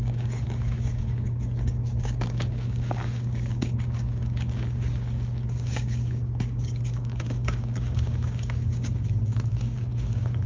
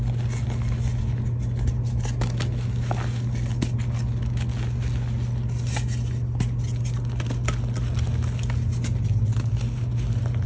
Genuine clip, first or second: second